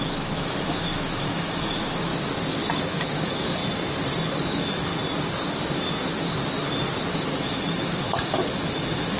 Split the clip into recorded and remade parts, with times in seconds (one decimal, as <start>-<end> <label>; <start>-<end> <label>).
0.0-2.1 remade; 2.1-2.9 recorded; 2.9-3.6 remade; 3.6-4.4 recorded; 4.4-4.9 remade; 4.9-7.1 recorded; 7.1-9.2 remade